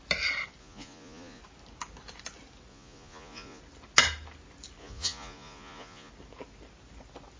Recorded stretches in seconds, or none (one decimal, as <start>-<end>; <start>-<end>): 0.0-0.6; 1.4-2.7; 3.6-4.8; 6.1-7.4

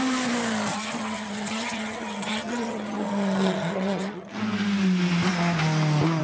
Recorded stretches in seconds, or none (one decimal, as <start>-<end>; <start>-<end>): 0.0-0.7; 4.4-6.2

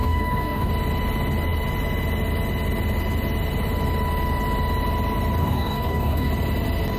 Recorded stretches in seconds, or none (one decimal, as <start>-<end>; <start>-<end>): 0.7-5.4; 6.3-7.0

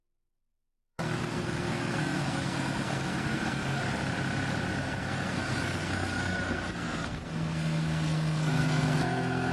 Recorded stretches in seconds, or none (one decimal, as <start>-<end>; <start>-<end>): 3.8-4.8